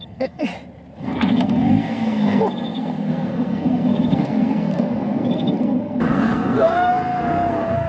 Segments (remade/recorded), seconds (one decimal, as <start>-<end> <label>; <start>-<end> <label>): 0.0-0.5 remade; 0.5-1.0 recorded; 1.0-7.9 remade